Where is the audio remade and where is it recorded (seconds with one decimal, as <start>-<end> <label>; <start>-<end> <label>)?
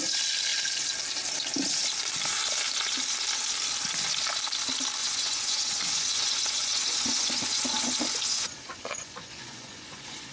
0.0-5.0 recorded; 5.0-10.3 remade